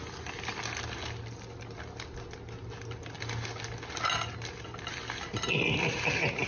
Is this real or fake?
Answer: real